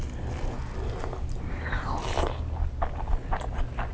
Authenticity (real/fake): real